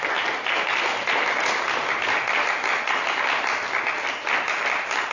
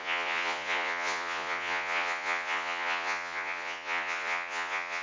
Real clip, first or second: first